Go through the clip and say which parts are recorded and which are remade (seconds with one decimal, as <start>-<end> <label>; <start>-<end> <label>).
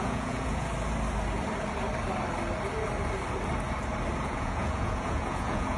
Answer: 0.0-0.7 remade; 0.7-4.2 recorded; 4.2-5.8 remade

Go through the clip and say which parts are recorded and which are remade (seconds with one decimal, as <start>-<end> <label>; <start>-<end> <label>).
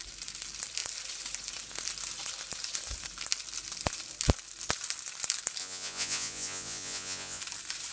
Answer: 0.0-5.6 recorded; 5.6-7.4 remade; 7.4-7.9 recorded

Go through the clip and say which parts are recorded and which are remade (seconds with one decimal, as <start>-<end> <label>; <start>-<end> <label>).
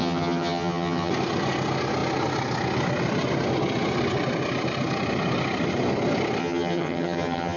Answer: 0.0-1.1 remade; 1.1-6.4 recorded; 6.4-7.6 remade